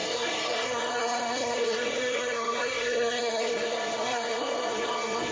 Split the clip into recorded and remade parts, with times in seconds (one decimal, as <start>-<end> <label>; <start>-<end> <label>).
0.0-5.3 remade

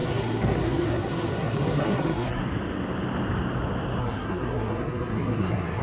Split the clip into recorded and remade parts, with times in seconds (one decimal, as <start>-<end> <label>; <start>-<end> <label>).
0.0-2.4 remade; 2.4-4.0 recorded; 4.0-5.8 remade

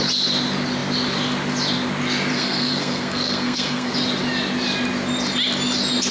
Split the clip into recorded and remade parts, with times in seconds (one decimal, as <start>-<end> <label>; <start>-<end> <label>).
0.0-2.3 recorded; 2.3-3.9 remade; 3.9-6.1 recorded

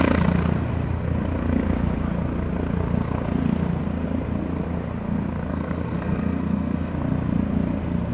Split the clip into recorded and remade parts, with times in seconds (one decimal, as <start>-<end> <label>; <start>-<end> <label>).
0.0-5.5 recorded; 5.5-6.9 remade; 6.9-8.1 recorded

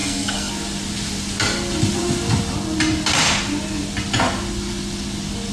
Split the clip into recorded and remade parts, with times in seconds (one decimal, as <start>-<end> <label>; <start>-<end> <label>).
0.0-0.5 remade; 0.5-5.5 recorded

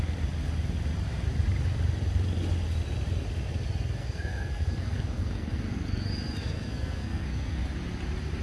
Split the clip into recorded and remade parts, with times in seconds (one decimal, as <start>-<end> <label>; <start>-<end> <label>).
0.0-4.0 recorded; 4.0-6.0 remade; 6.0-6.4 recorded; 6.4-7.6 remade; 7.6-8.4 recorded

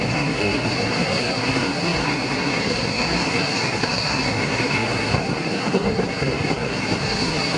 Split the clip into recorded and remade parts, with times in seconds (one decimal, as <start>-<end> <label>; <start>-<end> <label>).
0.0-7.6 remade